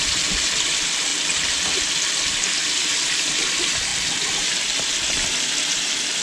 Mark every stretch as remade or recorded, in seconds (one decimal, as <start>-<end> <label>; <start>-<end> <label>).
0.0-1.1 remade; 1.1-1.8 recorded; 1.8-3.9 remade; 3.9-4.4 recorded; 4.4-6.2 remade